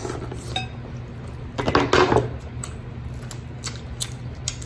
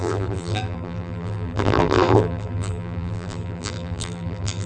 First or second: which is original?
first